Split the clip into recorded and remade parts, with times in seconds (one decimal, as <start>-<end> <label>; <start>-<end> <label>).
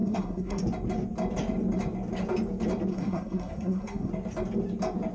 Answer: 0.0-0.6 remade; 0.6-2.9 recorded; 2.9-4.1 remade; 4.1-5.1 recorded